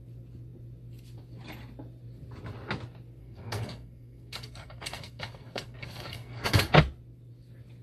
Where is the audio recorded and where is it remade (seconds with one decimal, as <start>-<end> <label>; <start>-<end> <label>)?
0.0-3.2 recorded; 3.2-6.8 remade; 6.8-7.8 recorded